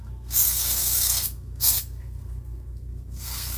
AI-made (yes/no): yes